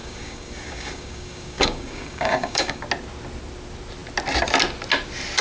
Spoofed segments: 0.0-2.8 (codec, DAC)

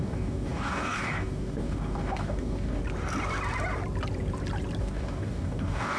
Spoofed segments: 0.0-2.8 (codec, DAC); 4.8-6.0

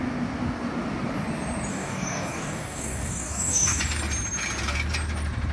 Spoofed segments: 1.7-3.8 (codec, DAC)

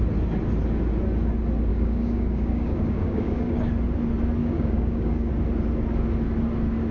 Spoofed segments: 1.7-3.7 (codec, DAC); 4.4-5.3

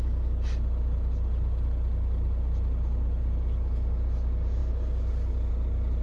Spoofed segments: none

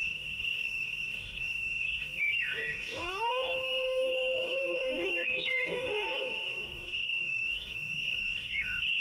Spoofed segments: 0.0-9.0 (codec, DAC)